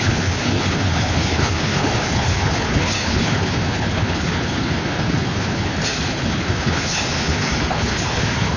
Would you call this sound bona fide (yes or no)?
no